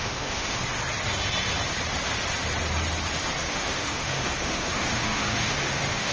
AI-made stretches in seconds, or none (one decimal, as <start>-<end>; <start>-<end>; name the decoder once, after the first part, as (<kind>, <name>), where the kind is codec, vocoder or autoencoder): 0.0-0.6 (autoencoder, DAC-VAE); 3.4-6.1